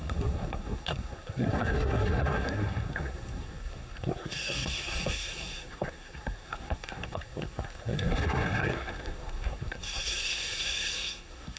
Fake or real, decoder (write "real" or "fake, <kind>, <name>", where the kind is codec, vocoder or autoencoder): fake, codec, SNAC